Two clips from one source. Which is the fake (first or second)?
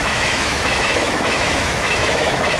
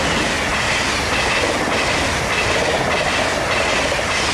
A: first